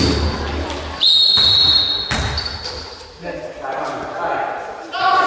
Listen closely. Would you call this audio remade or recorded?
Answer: recorded